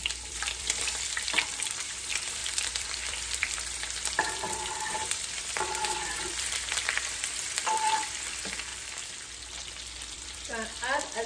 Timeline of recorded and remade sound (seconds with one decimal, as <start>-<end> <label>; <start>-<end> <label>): 0.0-8.7 remade; 8.7-10.1 recorded; 10.1-11.3 remade